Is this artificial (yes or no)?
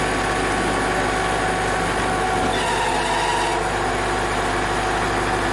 no